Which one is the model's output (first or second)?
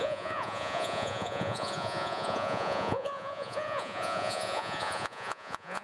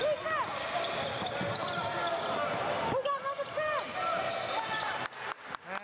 first